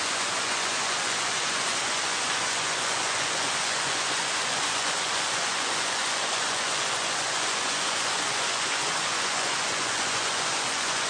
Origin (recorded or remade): remade